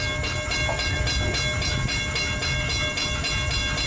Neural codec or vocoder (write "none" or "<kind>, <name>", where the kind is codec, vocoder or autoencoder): none